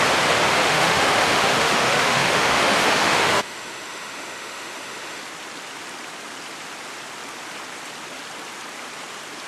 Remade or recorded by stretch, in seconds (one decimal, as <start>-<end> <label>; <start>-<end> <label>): 0.0-0.6 recorded; 0.6-5.2 remade; 5.2-9.5 recorded